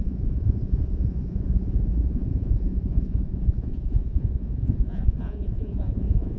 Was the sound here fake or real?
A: fake